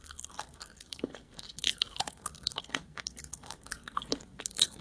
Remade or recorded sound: remade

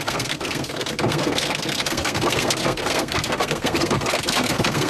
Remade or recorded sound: remade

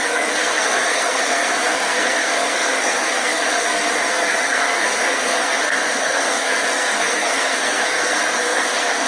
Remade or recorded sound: remade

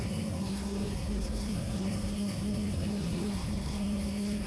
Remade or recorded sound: remade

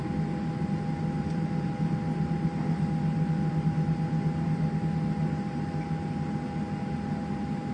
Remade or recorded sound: recorded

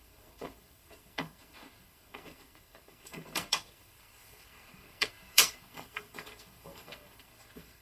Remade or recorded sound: remade